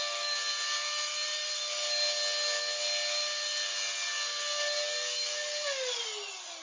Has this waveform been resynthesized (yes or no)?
no